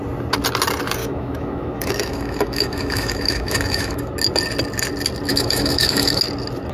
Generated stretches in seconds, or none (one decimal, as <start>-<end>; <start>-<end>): 1.0-4.1; 5.3-6.2